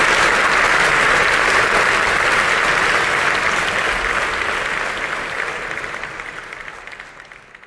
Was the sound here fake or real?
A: real